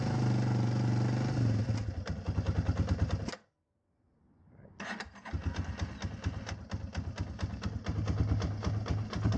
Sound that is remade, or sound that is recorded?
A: recorded